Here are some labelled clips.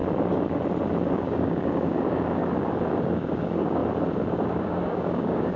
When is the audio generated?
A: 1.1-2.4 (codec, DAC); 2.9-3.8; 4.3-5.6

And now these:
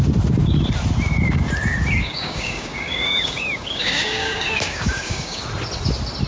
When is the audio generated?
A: 2.0-5.4 (codec, DAC)